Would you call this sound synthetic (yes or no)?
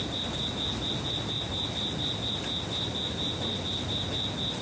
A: no